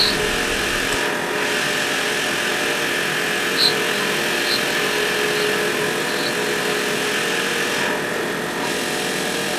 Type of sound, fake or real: real